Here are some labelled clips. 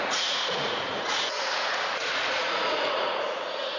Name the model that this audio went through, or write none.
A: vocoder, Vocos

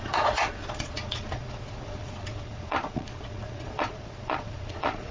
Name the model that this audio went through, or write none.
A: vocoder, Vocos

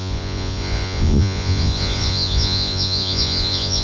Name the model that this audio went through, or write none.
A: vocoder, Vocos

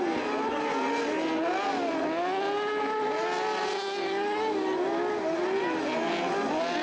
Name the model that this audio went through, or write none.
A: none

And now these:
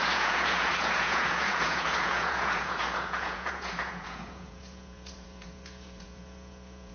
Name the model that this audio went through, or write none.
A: vocoder, Vocos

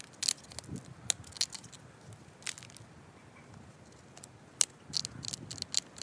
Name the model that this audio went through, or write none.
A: none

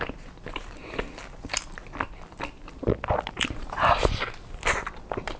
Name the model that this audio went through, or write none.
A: none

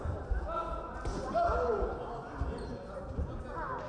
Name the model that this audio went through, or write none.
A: none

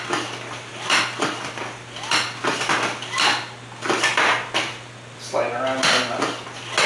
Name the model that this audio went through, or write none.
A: none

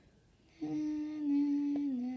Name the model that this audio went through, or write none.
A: none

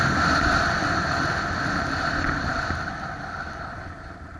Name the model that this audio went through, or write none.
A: none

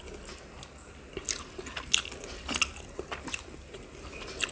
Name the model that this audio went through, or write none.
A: none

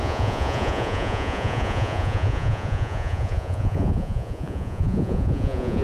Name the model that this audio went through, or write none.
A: vocoder, Vocos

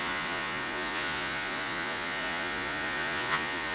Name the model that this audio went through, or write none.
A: vocoder, Vocos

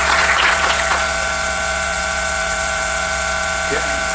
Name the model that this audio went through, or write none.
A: vocoder, Vocos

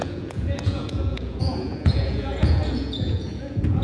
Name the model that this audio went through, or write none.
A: vocoder, Vocos